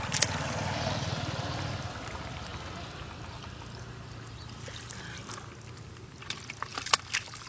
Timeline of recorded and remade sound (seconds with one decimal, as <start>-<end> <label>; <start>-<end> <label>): 0.0-7.5 recorded